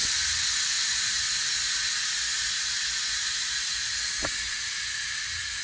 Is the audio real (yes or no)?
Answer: yes